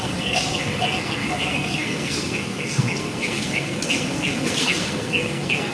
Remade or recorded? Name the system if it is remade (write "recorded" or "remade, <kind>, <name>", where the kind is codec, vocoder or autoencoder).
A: remade, codec, SNAC